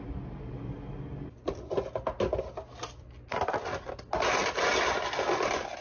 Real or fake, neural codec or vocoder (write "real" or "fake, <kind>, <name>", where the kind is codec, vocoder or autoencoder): real